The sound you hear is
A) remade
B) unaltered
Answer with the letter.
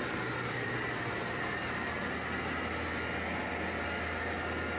B